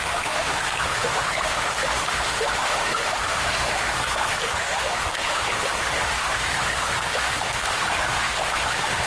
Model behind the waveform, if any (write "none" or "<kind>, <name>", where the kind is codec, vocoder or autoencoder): autoencoder, DAC-VAE